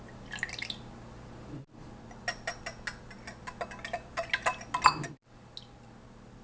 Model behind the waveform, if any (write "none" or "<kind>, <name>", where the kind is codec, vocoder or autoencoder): none